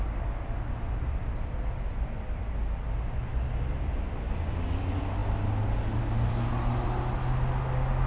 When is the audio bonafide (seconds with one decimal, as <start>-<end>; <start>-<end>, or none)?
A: 0.0-8.1